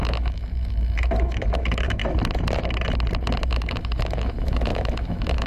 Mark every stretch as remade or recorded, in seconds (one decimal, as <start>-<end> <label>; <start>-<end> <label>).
0.0-2.0 remade; 2.0-3.5 recorded; 3.5-5.5 remade